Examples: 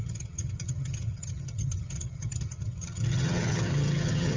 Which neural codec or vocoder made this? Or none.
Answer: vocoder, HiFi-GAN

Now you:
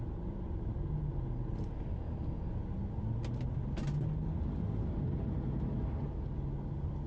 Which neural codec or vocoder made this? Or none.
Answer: none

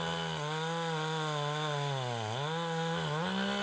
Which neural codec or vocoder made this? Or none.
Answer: none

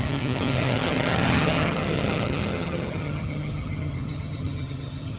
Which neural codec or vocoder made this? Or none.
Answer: vocoder, HiFi-GAN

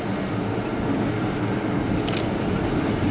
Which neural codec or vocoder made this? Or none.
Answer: none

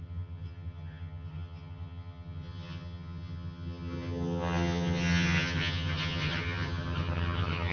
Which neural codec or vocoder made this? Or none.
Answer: vocoder, HiFi-GAN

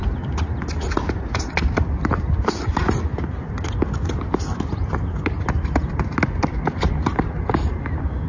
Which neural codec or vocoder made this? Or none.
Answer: none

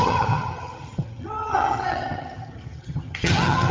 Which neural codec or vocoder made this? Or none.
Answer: vocoder, HiFi-GAN